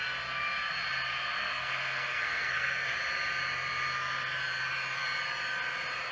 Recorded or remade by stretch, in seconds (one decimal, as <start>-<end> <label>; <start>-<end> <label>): 0.0-1.4 recorded; 1.4-2.9 remade; 2.9-6.1 recorded

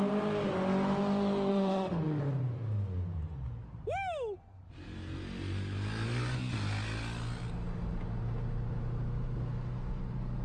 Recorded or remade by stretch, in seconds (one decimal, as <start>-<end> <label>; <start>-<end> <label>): 0.0-1.5 recorded; 1.5-2.2 remade; 2.2-10.4 recorded

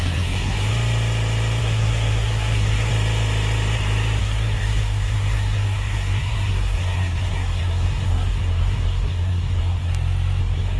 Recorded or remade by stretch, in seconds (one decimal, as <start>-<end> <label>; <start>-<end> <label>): 0.0-0.7 remade; 0.7-1.6 recorded; 1.6-2.9 remade; 2.9-4.2 recorded; 4.2-9.9 remade; 9.9-10.4 recorded; 10.4-10.8 remade

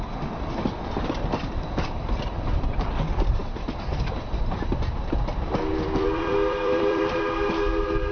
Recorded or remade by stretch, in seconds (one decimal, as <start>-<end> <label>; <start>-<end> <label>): 0.0-1.4 recorded; 1.4-2.0 remade; 2.0-3.4 recorded; 3.4-7.2 remade; 7.2-8.1 recorded

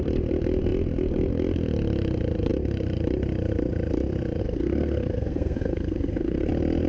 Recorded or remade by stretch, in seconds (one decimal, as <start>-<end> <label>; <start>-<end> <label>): 0.0-4.4 recorded; 4.4-6.5 remade; 6.5-6.9 recorded

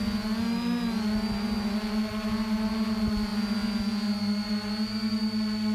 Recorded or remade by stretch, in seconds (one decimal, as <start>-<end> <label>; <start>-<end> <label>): 0.0-5.7 recorded

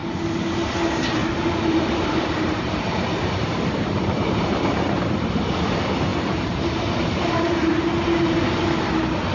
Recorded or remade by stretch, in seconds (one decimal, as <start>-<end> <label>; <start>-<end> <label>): 0.0-1.2 recorded; 1.2-5.3 remade; 5.3-6.1 recorded; 6.1-7.9 remade; 7.9-9.3 recorded